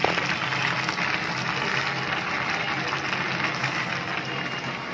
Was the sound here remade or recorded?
recorded